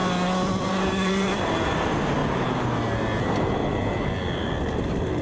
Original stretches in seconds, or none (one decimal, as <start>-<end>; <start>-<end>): 0.0-0.7; 2.2-5.2